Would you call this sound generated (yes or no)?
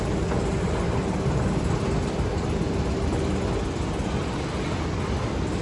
no